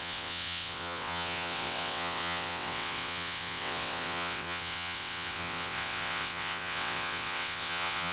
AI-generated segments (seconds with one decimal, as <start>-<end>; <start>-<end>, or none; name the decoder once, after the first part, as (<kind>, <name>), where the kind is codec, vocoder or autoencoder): 0.0-8.1 (vocoder, WaveNeXt)